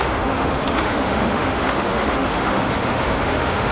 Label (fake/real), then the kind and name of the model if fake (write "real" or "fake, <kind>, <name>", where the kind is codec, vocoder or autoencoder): fake, autoencoder, DAC-VAE